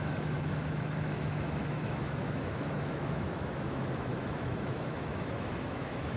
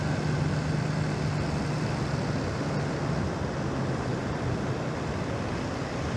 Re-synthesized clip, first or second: first